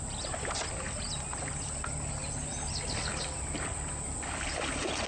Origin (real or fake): real